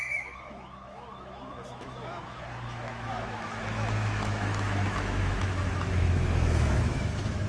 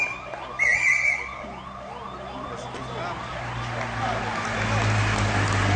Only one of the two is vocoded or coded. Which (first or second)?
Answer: first